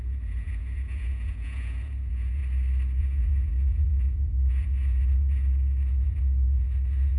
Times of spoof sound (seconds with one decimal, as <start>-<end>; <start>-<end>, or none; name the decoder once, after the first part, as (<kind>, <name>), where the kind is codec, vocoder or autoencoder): 0.0-2.4 (vocoder, Vocos); 3.0-7.2